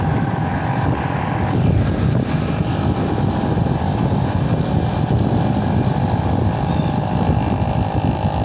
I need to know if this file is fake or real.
real